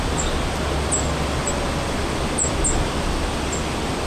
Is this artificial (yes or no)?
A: no